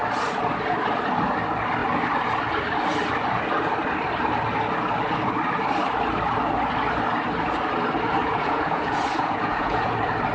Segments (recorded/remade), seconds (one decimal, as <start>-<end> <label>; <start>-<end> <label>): 0.0-8.2 recorded; 8.2-9.9 remade; 9.9-10.3 recorded